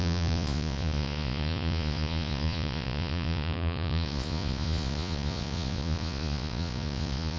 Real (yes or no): no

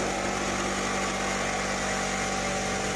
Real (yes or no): yes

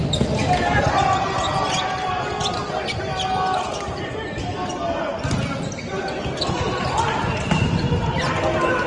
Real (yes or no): yes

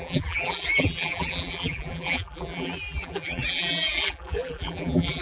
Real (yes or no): no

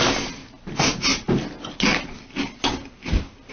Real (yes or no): yes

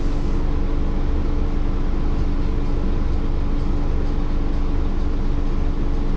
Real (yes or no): yes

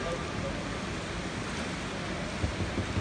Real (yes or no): yes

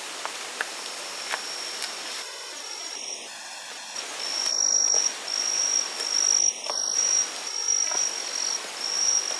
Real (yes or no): yes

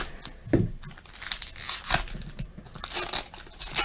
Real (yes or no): yes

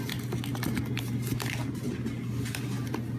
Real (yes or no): yes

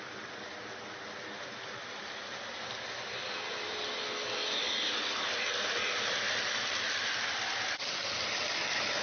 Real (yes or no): yes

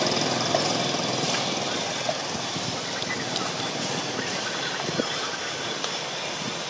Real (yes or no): yes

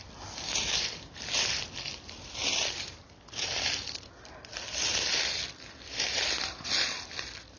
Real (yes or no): no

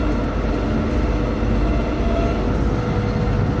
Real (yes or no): yes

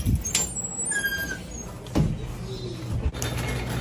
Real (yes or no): yes